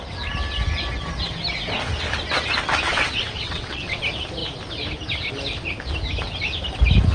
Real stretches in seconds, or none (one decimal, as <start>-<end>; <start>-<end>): 0.0-2.9; 4.0-7.1